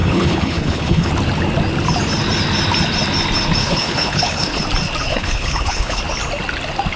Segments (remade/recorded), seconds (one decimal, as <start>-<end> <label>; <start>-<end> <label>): 0.0-1.1 remade; 1.1-3.6 recorded; 3.6-4.6 remade; 4.6-5.1 recorded; 5.1-6.0 remade; 6.0-7.0 recorded